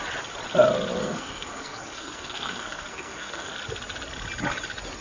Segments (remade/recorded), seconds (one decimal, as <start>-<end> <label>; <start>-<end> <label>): 0.0-1.0 recorded; 1.0-3.5 remade; 3.5-5.0 recorded